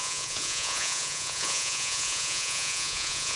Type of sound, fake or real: fake